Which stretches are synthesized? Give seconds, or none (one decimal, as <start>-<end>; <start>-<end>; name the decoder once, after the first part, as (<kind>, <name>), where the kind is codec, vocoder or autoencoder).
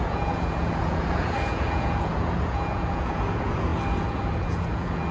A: 0.0-5.1 (vocoder, Vocos)